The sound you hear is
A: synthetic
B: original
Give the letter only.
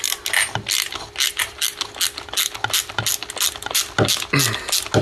B